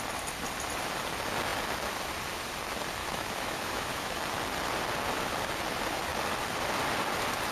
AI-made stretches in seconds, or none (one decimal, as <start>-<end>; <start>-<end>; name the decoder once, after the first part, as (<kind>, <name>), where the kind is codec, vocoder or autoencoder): 3.0-4.2 (autoencoder, DAC-VAE)